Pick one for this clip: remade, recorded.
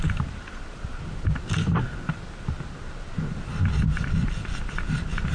recorded